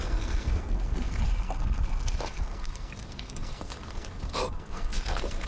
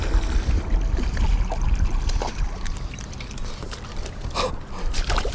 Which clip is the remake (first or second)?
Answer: first